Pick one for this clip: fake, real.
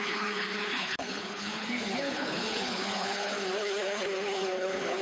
fake